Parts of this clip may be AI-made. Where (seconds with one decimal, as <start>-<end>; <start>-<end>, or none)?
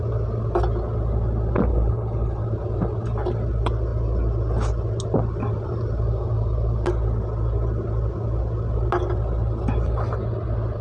1.7-2.4